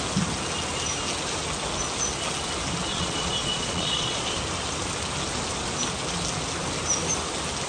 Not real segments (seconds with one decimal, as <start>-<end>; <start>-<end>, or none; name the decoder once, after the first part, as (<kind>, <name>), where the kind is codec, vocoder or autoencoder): 2.9-4.4 (vocoder, Vocos)